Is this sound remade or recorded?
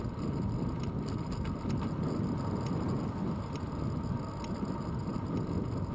recorded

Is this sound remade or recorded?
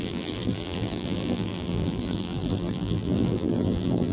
remade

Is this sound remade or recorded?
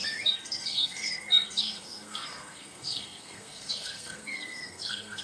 remade